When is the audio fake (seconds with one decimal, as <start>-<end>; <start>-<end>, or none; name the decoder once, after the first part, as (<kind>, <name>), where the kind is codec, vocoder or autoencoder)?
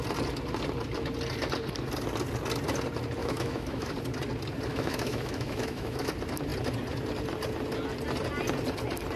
3.2-3.9 (autoencoder, DAC-VAE); 4.7-6.1